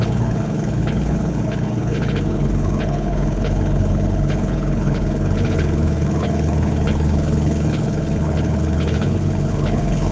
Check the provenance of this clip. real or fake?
fake